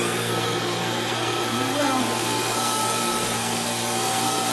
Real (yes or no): no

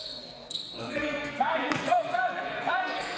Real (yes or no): no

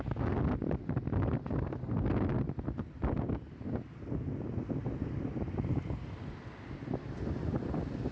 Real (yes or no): yes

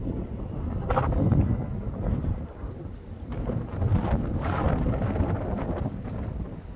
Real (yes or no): yes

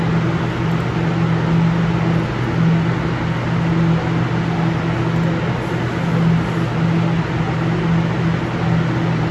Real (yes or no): yes